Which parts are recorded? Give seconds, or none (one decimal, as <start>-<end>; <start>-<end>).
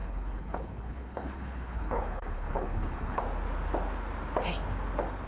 3.2-5.3